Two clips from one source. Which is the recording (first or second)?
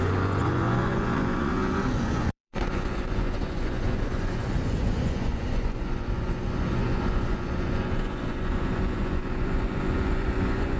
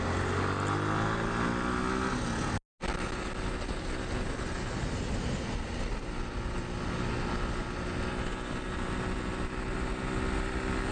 second